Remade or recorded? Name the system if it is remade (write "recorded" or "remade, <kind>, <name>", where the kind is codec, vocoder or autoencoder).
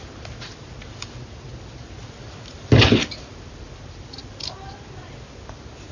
recorded